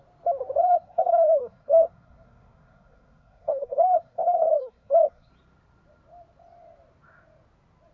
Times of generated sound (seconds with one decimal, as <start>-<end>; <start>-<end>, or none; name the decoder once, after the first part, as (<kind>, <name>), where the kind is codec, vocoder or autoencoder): 0.6-5.3 (codec, SNAC)